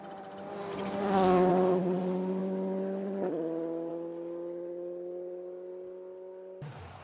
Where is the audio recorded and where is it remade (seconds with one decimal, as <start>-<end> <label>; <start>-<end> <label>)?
0.0-7.0 recorded